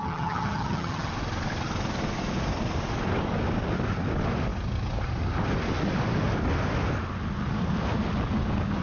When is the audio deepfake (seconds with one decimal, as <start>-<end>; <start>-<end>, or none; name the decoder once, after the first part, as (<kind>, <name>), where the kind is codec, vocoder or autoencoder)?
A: 0.0-1.1 (vocoder, HiFi-GAN)